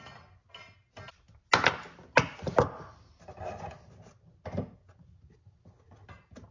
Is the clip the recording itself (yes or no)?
yes